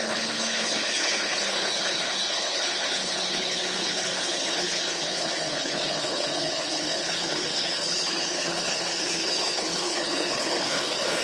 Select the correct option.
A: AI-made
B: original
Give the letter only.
A